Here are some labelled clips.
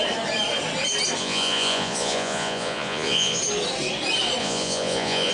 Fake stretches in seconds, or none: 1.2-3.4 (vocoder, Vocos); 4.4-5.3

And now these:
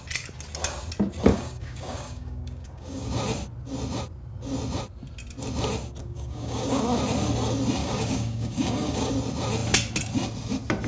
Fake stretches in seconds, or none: 1.3-3.1 (codec, DAC); 6.0-6.8; 7.8-9.1

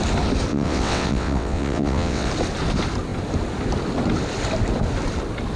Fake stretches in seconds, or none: 0.5-2.3 (vocoder, WaveNeXt)

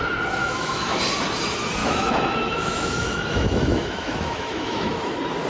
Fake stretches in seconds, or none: 0.4-1.0 (autoencoder, DAC-VAE); 1.8-5.1